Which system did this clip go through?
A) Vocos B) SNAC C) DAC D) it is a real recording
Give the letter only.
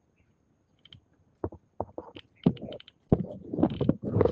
D